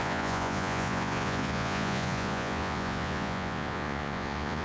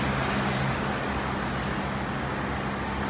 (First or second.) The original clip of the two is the second